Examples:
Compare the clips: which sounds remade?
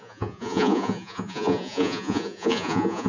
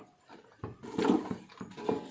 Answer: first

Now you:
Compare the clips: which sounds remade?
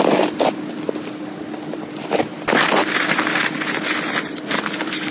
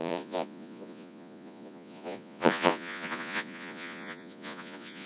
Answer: second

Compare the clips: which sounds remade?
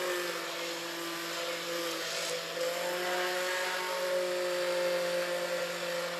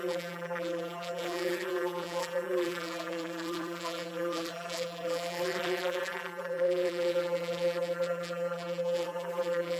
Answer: second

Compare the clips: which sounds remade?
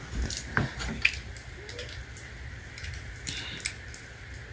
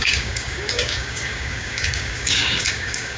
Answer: second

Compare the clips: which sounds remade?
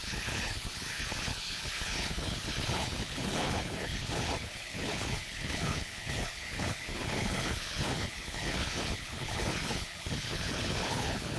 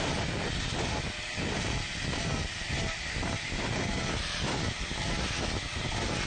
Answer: first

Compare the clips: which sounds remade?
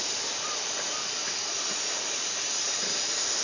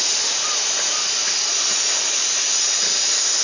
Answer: first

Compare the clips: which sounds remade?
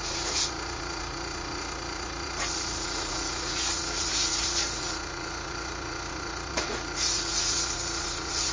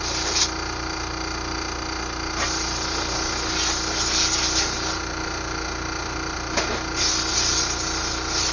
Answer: first